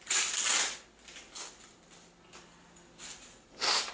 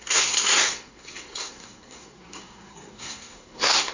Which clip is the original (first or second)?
first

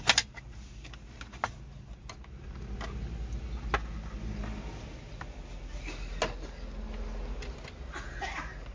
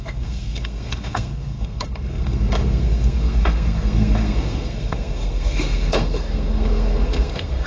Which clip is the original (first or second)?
first